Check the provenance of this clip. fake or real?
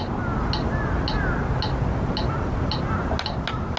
real